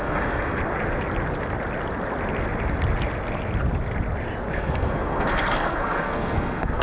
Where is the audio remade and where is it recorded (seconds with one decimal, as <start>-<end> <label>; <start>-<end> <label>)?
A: 0.0-0.6 remade; 0.6-4.5 recorded; 4.5-6.8 remade

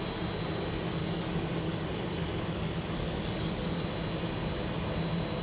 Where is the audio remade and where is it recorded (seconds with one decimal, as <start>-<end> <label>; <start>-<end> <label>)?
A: 0.0-1.0 recorded; 1.0-3.8 remade; 3.8-5.4 recorded

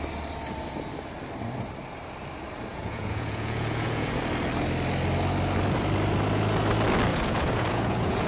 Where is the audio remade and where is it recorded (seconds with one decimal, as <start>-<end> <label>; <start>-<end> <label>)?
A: 0.0-2.7 recorded; 2.7-4.2 remade; 4.2-7.1 recorded; 7.1-8.3 remade